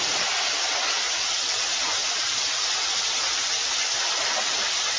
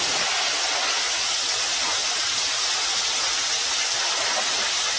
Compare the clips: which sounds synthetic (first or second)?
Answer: first